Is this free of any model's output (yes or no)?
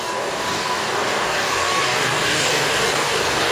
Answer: no